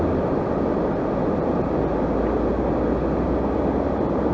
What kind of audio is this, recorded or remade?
recorded